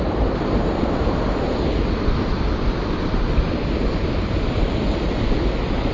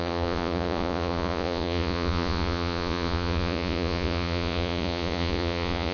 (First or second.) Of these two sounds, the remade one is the second